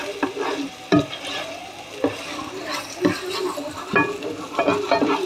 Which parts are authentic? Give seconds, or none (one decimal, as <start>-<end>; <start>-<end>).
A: 0.0-5.3

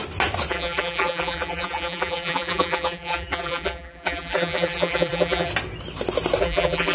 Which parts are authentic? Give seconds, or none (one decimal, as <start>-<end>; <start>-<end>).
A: 0.0-0.5; 5.5-6.4